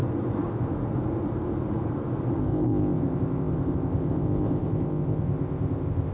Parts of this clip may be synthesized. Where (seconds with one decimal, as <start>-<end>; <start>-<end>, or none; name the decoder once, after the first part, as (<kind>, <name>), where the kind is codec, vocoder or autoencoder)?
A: 2.4-6.1 (codec, ZipCodec)